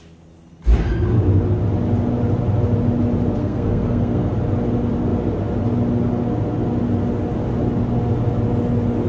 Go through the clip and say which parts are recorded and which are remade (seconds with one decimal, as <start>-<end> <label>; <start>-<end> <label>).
0.0-3.4 recorded; 3.4-4.3 remade; 4.3-9.1 recorded